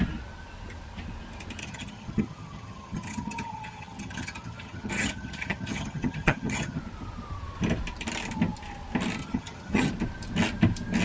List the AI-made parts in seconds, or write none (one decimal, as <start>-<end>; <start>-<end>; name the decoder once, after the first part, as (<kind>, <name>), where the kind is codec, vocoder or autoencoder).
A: 1.6-6.8 (vocoder, HiFi-GAN); 9.2-9.9